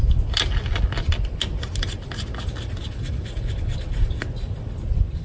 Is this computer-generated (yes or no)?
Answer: no